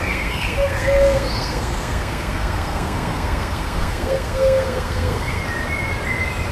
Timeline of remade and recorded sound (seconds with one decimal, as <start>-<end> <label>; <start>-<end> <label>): 0.0-5.4 remade; 5.4-6.5 recorded